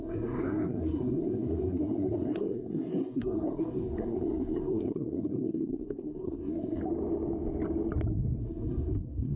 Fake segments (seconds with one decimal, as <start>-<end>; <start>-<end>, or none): 0.0-6.8; 8.4-9.4